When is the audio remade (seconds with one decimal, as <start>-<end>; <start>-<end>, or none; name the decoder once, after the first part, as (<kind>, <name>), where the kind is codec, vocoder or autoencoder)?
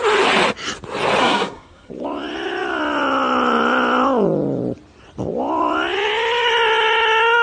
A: 1.2-1.9 (codec, SNAC)